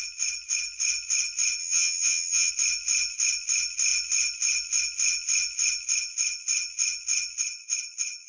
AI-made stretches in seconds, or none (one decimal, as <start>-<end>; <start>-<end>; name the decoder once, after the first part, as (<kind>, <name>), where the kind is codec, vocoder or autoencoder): 1.6-2.5 (vocoder, HiFi-GAN)